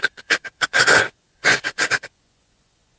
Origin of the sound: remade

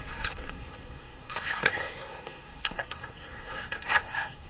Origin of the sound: remade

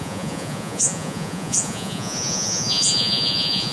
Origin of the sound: remade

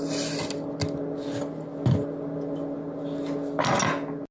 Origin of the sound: recorded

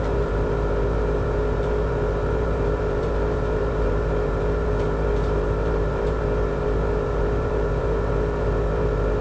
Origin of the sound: remade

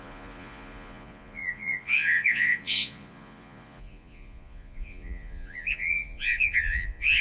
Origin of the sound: remade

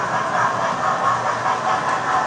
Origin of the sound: recorded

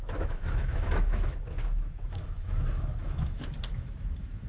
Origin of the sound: remade